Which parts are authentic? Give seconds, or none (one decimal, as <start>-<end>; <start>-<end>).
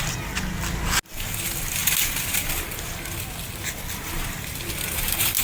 0.0-5.4